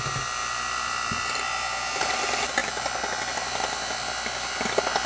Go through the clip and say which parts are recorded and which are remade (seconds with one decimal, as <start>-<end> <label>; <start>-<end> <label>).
0.0-5.1 remade